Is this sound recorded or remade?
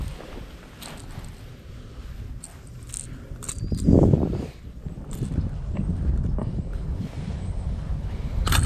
recorded